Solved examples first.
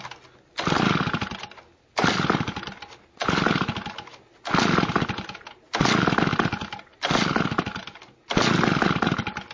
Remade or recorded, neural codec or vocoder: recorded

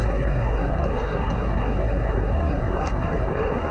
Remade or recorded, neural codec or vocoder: remade, codec, SNAC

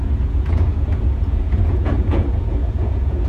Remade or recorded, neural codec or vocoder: remade, vocoder, Vocos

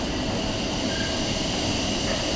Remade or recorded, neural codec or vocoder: recorded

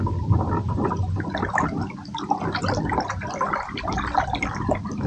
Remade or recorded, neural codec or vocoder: recorded